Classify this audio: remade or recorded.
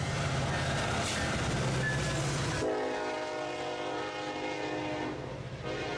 recorded